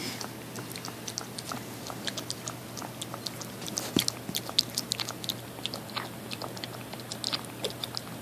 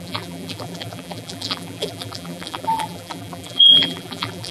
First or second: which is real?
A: first